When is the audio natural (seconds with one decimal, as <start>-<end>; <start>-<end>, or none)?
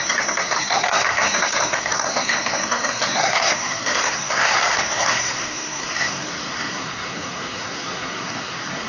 none